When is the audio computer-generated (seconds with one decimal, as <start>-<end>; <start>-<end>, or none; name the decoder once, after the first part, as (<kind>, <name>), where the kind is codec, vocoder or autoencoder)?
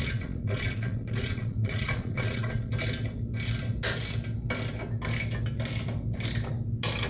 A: 0.0-2.7 (vocoder, Vocos)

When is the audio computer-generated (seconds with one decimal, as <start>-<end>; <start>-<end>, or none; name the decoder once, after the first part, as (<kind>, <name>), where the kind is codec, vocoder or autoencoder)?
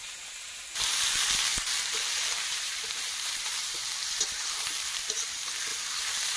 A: 1.5-5.3 (vocoder, BigVGAN v2); 5.7-6.4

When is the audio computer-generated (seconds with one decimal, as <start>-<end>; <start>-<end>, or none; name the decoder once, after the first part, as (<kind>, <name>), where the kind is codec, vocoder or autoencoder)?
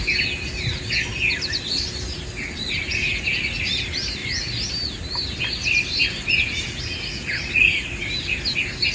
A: none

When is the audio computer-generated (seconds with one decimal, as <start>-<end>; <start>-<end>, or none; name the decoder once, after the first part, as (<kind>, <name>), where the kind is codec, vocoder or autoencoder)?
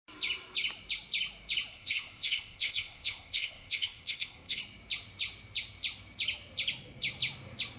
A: 1.7-4.6 (codec, ZipCodec)